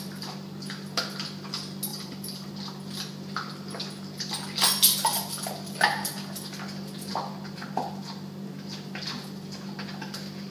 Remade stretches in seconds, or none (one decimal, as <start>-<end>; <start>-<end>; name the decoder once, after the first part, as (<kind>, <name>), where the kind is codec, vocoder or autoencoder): 1.9-2.5 (vocoder, BigVGAN v2)